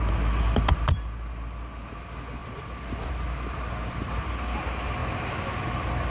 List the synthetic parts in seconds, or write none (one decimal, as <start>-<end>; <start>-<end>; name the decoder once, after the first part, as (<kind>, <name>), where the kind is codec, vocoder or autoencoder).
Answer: 2.4-4.3 (vocoder, BigVGAN v2)